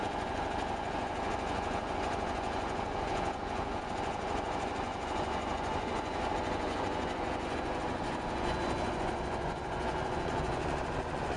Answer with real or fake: fake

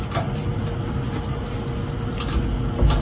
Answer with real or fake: real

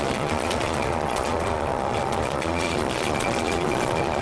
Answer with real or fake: fake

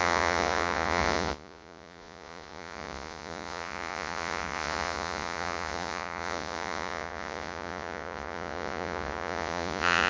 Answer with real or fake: fake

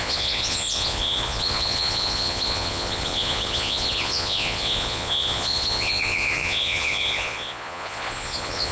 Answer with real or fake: fake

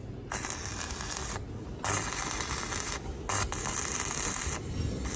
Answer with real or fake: real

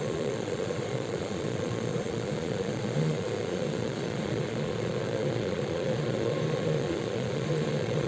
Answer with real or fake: fake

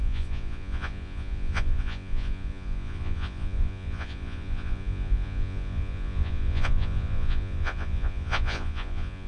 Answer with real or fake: fake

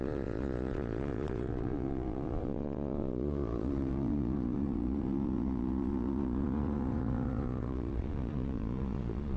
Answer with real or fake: fake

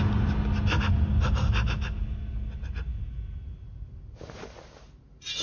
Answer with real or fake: real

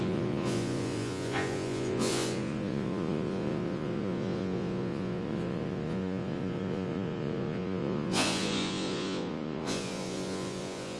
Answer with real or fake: fake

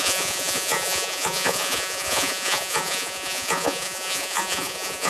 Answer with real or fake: fake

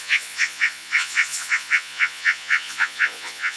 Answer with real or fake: fake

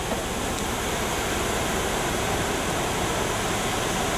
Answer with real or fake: real